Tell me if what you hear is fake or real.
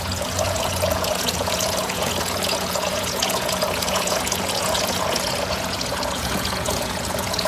fake